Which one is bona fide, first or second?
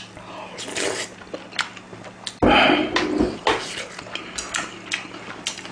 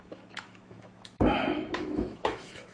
first